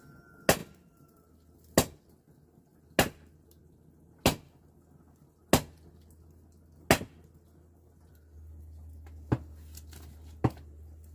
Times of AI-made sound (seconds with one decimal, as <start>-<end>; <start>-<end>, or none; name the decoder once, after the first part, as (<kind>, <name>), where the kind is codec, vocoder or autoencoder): none